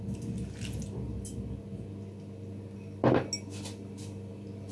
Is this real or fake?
real